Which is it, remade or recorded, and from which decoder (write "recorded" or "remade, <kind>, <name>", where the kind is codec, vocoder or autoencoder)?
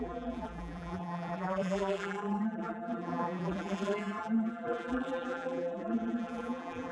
remade, vocoder, BigVGAN v2